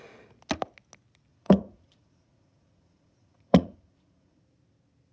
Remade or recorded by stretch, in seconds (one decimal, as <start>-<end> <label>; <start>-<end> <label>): 0.0-1.3 recorded; 1.3-4.4 remade; 4.4-5.1 recorded